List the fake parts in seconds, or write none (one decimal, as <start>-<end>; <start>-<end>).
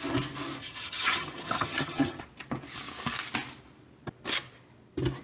0.6-2.2